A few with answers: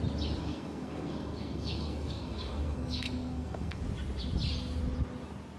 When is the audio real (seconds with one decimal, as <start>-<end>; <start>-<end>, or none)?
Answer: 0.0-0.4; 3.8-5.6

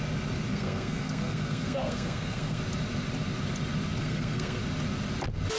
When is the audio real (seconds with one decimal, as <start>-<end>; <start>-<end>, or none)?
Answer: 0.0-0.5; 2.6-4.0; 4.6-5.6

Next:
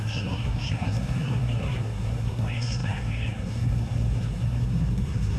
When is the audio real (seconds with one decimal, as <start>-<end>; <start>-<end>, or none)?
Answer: none